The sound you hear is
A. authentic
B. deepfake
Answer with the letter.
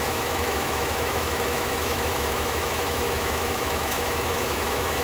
B